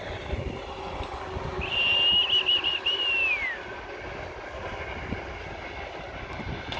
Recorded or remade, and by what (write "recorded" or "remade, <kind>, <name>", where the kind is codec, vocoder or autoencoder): recorded